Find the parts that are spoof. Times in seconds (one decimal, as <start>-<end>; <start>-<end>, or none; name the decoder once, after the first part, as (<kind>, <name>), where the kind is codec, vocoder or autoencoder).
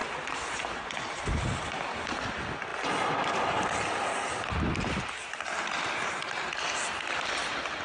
none